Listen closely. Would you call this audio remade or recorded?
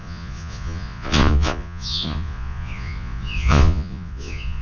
remade